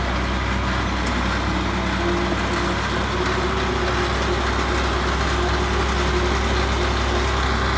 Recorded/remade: recorded